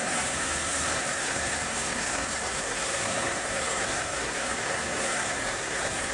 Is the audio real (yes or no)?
no